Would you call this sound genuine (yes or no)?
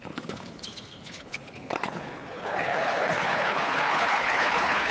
no